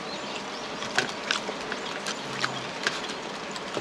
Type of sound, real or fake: real